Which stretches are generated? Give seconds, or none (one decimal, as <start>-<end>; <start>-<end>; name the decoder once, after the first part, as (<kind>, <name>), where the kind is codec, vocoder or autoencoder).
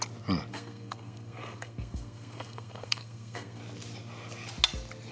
0.5-3.6 (codec, SNAC)